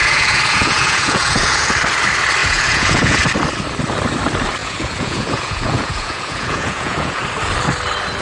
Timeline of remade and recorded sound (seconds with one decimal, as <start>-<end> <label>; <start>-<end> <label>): 0.0-1.7 remade; 1.7-2.4 recorded; 2.4-3.2 remade; 3.2-4.6 recorded; 4.6-7.2 remade; 7.2-8.2 recorded